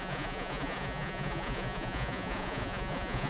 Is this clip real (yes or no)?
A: no